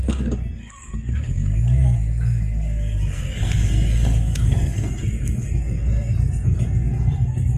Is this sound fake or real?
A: fake